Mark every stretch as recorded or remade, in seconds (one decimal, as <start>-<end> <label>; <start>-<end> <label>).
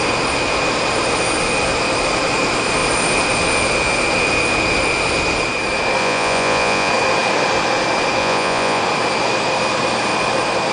0.0-6.0 recorded; 6.0-6.9 remade; 6.9-8.2 recorded; 8.2-8.8 remade; 8.8-10.7 recorded